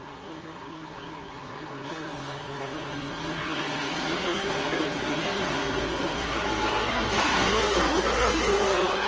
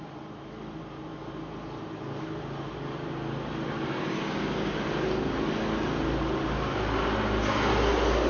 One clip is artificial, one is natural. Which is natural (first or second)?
second